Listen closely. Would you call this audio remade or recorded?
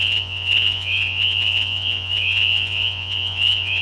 remade